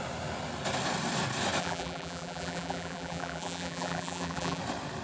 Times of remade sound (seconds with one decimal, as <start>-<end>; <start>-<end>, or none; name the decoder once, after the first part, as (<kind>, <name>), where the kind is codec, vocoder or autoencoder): 1.6-4.6 (vocoder, BigVGAN v2)